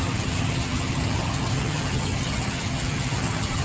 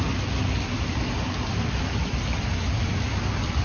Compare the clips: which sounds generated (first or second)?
first